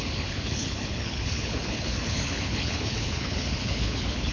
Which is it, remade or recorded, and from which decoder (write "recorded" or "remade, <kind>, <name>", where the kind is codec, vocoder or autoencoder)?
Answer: remade, codec, HILCodec